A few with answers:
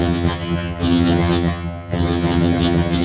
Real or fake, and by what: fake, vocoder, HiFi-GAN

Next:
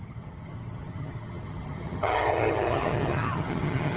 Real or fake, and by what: fake, vocoder, HiFi-GAN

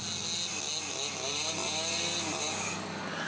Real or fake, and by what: real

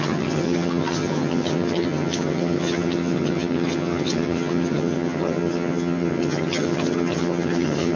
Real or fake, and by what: fake, vocoder, HiFi-GAN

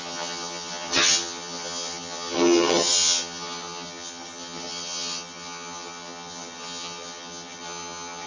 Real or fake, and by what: fake, vocoder, HiFi-GAN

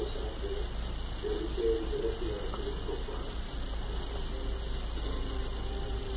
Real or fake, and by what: real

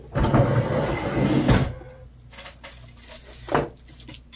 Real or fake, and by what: real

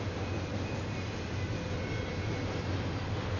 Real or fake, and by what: real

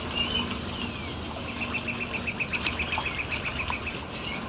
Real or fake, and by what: real